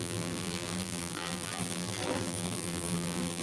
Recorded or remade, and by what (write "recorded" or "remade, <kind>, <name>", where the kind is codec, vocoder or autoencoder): remade, vocoder, BigVGAN v2